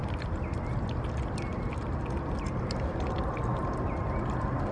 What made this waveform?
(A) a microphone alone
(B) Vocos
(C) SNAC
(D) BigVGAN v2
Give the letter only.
A